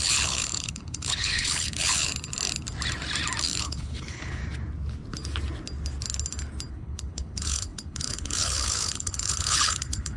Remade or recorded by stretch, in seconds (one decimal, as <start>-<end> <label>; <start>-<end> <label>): 0.0-2.1 remade; 2.1-3.6 recorded; 3.6-4.4 remade; 4.4-6.7 recorded; 6.7-10.2 remade